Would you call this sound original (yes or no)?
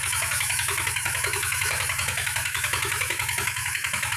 no